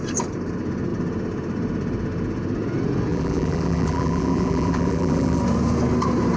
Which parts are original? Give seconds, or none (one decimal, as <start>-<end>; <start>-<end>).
0.0-3.1; 5.4-6.4